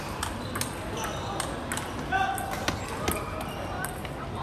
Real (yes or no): yes